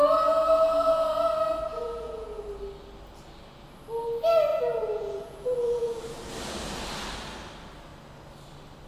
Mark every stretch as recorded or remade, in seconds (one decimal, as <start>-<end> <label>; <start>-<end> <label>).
0.0-1.7 recorded; 1.7-2.4 remade; 2.4-4.5 recorded; 4.5-6.0 remade; 6.0-8.9 recorded